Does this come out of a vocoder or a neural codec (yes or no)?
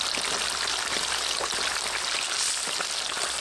no